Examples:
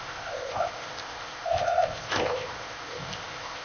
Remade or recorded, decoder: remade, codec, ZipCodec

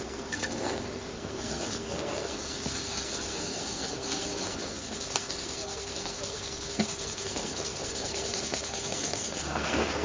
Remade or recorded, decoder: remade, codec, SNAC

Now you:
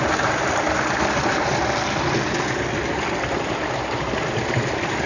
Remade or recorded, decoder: recorded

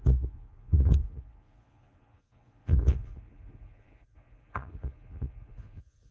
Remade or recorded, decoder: remade, vocoder, Vocos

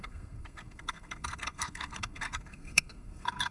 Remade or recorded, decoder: remade, codec, SNAC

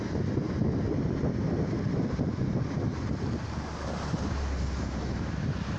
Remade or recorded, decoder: recorded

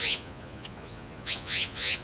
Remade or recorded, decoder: remade, vocoder, Vocos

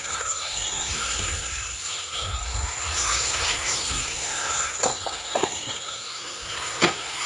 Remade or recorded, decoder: remade, codec, SNAC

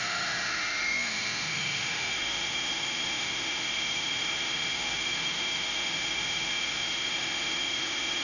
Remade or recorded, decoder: remade, autoencoder, DAC-VAE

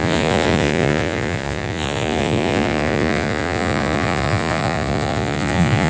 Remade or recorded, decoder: remade, vocoder, Vocos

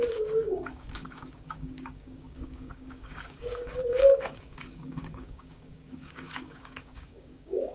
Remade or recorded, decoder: remade, codec, DAC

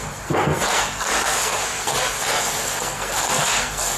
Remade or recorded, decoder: remade, codec, SNAC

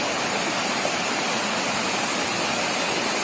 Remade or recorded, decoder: recorded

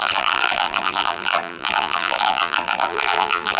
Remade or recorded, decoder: remade, vocoder, BigVGAN v2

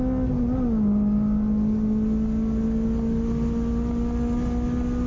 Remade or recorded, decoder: recorded